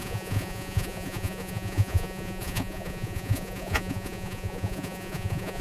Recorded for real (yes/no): no